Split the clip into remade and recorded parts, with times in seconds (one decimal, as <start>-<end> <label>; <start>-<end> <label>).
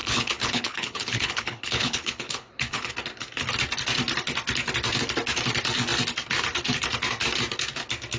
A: 0.0-2.9 remade; 2.9-8.2 recorded